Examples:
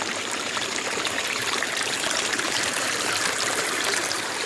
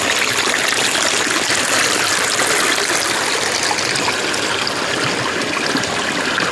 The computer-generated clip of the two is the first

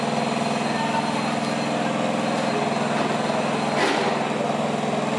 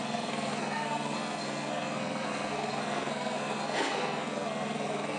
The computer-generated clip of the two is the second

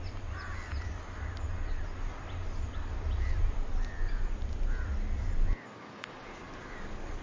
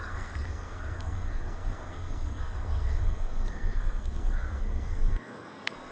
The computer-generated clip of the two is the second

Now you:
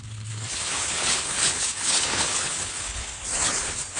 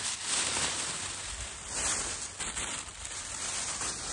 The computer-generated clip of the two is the first